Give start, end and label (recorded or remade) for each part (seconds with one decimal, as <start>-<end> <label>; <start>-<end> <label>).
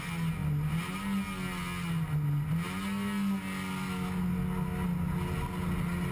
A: 0.0-6.1 recorded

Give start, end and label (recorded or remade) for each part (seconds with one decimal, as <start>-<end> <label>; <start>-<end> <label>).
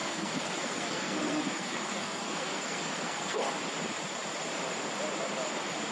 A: 0.0-3.5 remade; 3.5-5.9 recorded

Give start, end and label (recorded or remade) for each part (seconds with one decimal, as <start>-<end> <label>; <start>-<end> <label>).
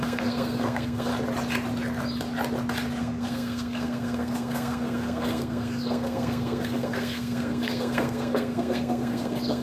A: 0.0-1.1 remade; 1.1-3.0 recorded; 3.0-9.6 remade